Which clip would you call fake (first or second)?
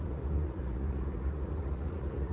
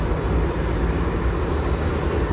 first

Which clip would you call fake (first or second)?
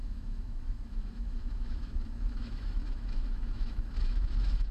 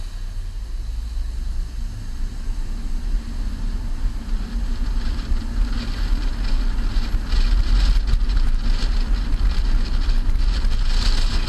first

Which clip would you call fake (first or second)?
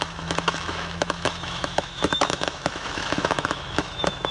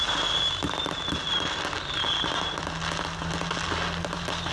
first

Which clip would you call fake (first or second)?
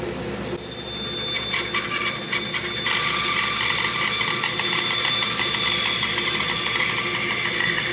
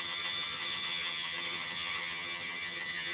second